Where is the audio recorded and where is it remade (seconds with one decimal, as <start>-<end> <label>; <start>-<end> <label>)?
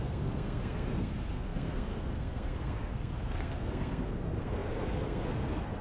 0.0-5.8 remade